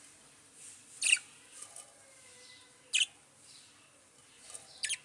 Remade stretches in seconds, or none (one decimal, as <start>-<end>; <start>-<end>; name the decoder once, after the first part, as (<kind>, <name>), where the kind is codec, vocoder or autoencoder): none